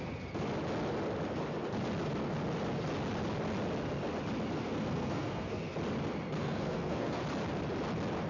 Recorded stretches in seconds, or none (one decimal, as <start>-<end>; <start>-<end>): 0.0-4.6; 5.6-6.4; 7.2-8.3